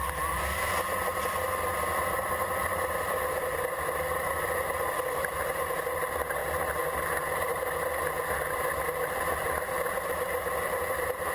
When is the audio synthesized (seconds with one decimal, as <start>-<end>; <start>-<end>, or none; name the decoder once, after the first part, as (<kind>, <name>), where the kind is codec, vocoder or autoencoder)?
1.7-5.8 (vocoder, BigVGAN v2); 7.5-8.2